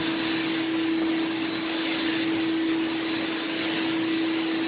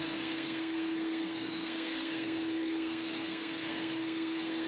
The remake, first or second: second